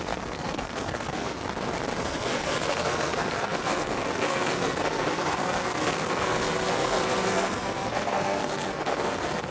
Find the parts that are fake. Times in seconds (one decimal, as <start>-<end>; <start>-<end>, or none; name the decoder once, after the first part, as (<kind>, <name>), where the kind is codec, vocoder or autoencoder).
0.0-1.4 (codec, SNAC); 2.0-9.5